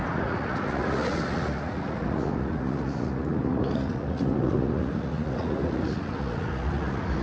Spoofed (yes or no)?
yes